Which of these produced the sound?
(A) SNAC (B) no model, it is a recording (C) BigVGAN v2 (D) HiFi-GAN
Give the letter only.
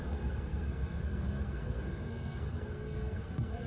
A